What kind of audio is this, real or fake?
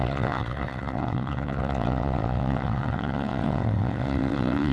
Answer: fake